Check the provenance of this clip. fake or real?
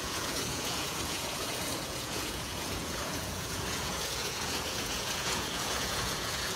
fake